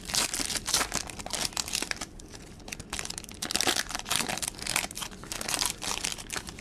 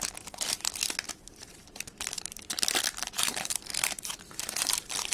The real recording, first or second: first